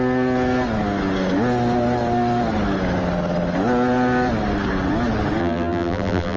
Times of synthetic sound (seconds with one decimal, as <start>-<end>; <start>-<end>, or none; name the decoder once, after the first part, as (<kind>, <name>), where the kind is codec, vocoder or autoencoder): 5.4-6.4 (vocoder, BigVGAN v2)